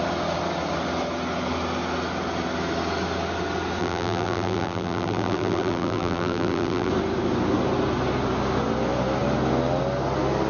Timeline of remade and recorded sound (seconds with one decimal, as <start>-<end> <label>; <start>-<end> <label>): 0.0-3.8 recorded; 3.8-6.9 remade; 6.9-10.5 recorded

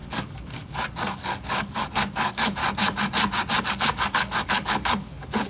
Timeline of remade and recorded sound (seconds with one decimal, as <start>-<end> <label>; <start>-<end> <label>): 0.0-2.6 remade; 2.6-3.6 recorded; 3.6-5.5 remade

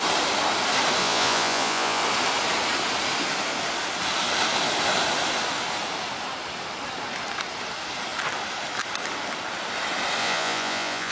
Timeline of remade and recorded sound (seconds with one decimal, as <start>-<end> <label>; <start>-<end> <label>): 0.0-1.0 recorded; 1.0-2.0 remade; 2.0-10.2 recorded; 10.2-11.1 remade

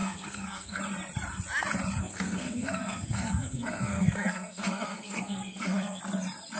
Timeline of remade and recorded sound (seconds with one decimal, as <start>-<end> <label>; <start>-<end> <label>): 0.0-0.8 remade; 0.8-2.0 recorded; 2.0-6.0 remade; 6.0-6.6 recorded

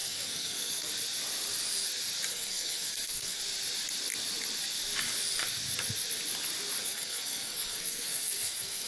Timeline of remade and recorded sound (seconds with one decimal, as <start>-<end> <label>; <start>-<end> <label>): 0.0-0.9 remade; 0.9-2.3 recorded; 2.3-3.4 remade; 3.4-6.8 recorded; 6.8-8.9 remade

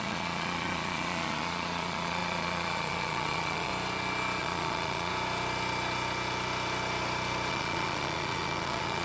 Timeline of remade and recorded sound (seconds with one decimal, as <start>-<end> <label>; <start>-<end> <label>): 0.0-3.7 remade; 3.7-4.4 recorded; 4.4-5.1 remade; 5.1-7.5 recorded; 7.5-9.0 remade

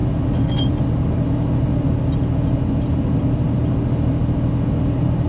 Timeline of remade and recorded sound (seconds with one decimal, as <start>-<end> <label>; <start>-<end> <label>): 0.0-5.3 recorded